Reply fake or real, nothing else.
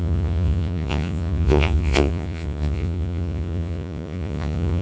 fake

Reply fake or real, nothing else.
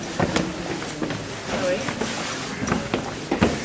real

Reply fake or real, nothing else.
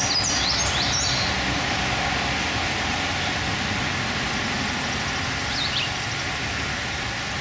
real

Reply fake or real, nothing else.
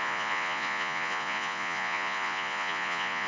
fake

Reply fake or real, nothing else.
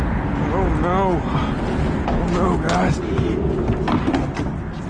real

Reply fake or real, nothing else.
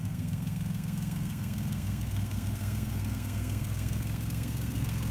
fake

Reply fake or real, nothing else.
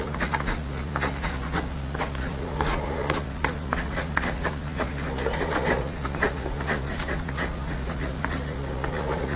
fake